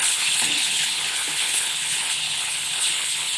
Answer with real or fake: fake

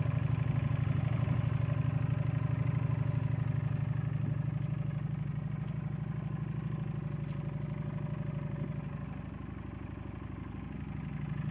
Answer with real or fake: real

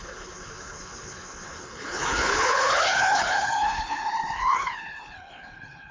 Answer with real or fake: fake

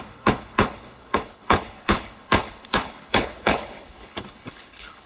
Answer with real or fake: fake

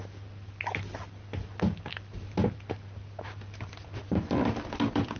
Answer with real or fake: real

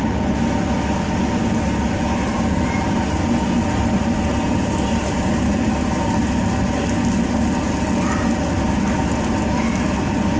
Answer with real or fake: real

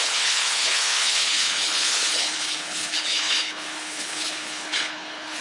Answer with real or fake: fake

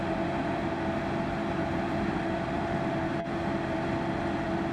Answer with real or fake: real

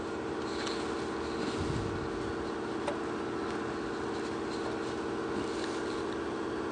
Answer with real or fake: real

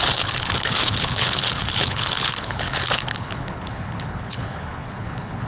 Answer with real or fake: fake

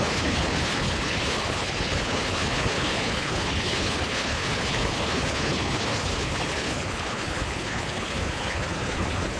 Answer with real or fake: fake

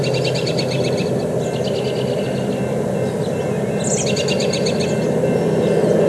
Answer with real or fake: real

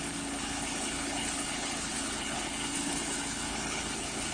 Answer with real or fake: fake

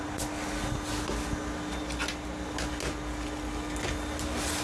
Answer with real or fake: real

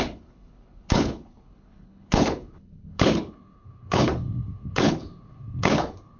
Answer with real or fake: fake